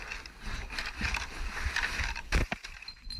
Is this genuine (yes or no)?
yes